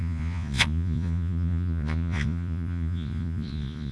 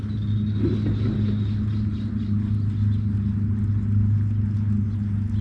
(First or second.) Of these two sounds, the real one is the second